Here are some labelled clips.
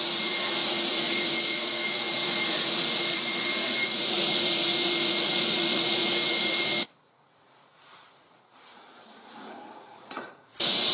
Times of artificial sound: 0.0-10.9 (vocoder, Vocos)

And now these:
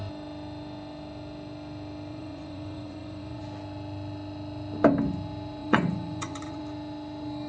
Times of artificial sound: 2.1-3.4 (vocoder, Vocos); 5.6-6.6

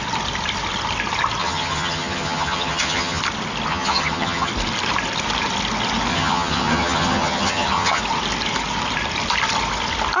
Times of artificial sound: 1.4-3.2 (vocoder, HiFi-GAN); 3.7-4.5; 6.1-8.0

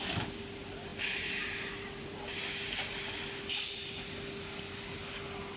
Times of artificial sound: none

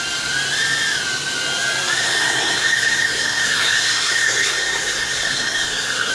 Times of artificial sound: 2.0-6.1 (codec, SNAC)